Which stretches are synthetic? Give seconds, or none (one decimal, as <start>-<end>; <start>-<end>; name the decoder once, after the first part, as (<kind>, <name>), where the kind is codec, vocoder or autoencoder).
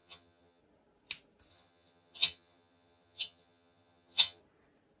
0.0-0.6 (vocoder, HiFi-GAN); 1.5-4.4